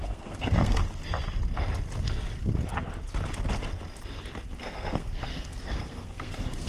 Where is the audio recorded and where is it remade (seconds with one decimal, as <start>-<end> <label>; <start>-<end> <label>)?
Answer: 0.0-0.8 remade; 0.8-4.6 recorded; 4.6-6.7 remade